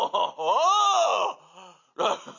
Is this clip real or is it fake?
real